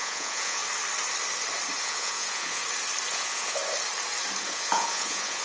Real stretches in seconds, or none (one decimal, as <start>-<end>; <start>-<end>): 0.6-1.8; 2.6-3.1; 3.6-4.4